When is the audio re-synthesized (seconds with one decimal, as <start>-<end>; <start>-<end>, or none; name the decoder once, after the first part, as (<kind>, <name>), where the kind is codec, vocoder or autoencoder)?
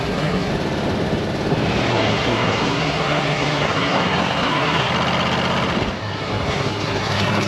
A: 0.0-0.5 (codec, SNAC); 1.9-4.9; 6.0-7.5